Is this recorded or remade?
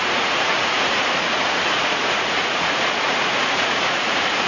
remade